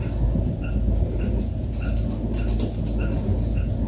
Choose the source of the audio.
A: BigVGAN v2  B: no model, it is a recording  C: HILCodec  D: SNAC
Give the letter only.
B